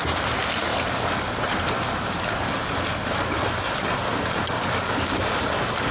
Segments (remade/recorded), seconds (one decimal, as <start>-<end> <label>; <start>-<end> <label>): 0.0-5.9 recorded